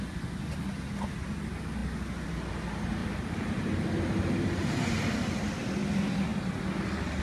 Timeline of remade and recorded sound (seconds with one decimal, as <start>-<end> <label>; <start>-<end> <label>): 0.0-3.0 recorded; 3.0-5.0 remade; 5.0-7.2 recorded